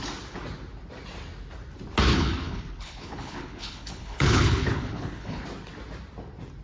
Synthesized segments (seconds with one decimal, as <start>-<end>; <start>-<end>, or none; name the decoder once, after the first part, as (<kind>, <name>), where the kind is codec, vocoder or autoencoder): 2.1-5.4 (codec, HILCodec)